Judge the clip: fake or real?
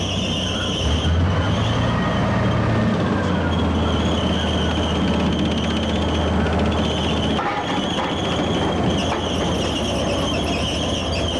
real